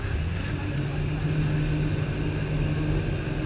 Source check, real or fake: real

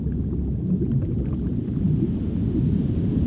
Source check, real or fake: real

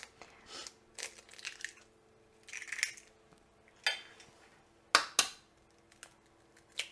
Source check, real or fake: real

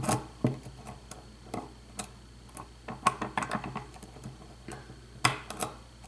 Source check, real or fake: real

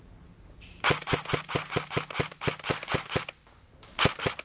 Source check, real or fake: real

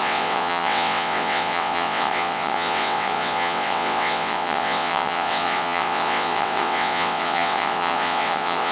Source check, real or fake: fake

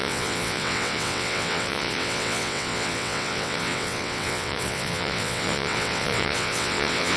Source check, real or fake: fake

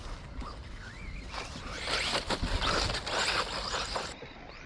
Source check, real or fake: real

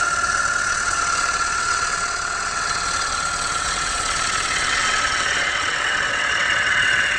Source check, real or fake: fake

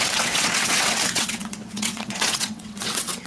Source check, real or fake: fake